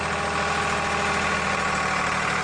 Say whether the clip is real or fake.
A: real